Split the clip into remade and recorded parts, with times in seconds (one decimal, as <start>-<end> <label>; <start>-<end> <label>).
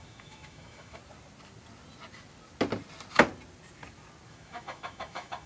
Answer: 0.0-1.0 remade; 1.0-4.3 recorded; 4.3-5.5 remade